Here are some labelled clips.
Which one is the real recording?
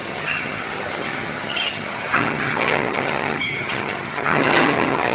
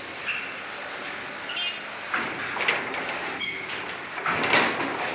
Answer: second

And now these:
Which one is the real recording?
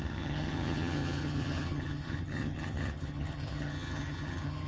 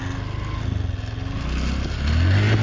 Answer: second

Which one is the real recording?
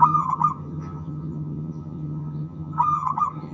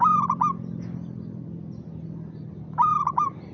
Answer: second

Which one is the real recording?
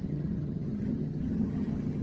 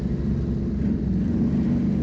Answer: second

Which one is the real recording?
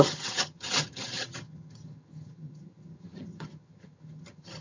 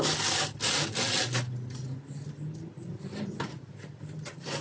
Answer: second